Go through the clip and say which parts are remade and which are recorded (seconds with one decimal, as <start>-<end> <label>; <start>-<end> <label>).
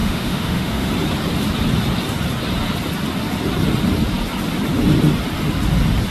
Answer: 0.0-0.9 remade; 0.9-6.1 recorded